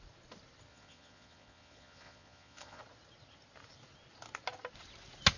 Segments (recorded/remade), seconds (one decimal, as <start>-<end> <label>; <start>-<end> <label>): 0.0-0.7 recorded; 0.7-2.8 remade; 2.8-5.4 recorded